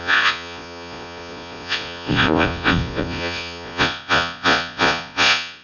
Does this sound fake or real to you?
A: fake